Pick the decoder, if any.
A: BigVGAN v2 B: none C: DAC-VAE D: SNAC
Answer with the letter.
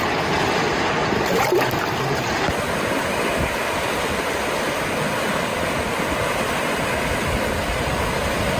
B